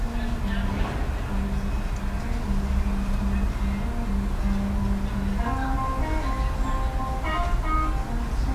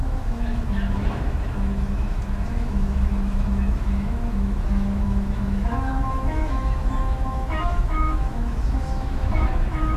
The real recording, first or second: first